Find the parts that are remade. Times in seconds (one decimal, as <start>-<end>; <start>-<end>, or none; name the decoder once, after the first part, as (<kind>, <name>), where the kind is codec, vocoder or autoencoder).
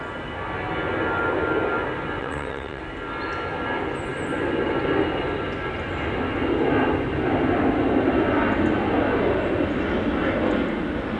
2.2-2.8 (vocoder, WaveNeXt)